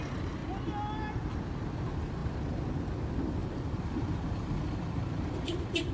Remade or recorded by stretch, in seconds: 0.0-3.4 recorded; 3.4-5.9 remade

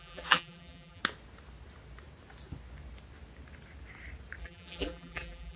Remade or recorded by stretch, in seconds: 0.0-1.0 remade; 1.0-4.4 recorded; 4.4-5.6 remade

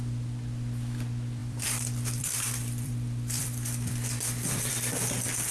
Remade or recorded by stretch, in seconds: 0.0-1.4 recorded; 1.4-4.7 remade; 4.7-5.5 recorded

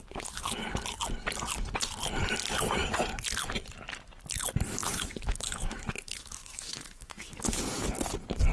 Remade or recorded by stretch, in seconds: 0.0-4.8 recorded; 4.8-7.6 remade; 7.6-8.5 recorded